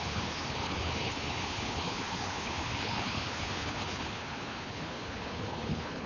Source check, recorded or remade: remade